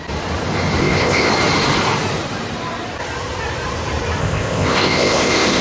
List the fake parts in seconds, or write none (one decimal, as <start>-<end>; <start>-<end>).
0.8-1.3; 4.2-5.6